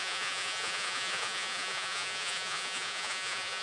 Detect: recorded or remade remade